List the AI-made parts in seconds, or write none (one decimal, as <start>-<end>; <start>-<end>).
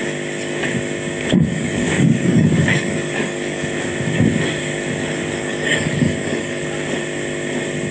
1.5-3.6; 5.4-6.6